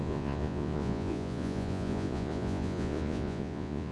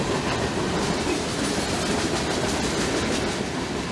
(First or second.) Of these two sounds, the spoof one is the first